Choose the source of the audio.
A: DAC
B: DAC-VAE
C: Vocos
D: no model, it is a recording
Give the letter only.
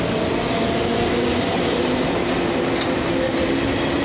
D